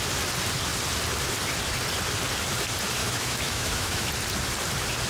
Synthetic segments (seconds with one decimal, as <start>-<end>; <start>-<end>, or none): 3.0-4.1